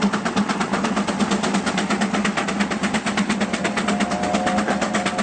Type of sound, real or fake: real